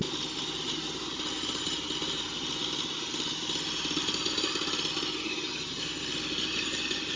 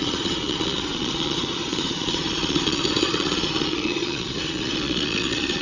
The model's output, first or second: second